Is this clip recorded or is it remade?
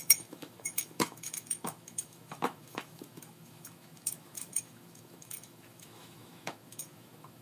remade